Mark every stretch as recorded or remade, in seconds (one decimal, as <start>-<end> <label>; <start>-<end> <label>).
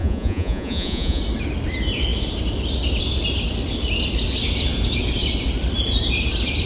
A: 0.0-1.2 remade; 1.2-6.7 recorded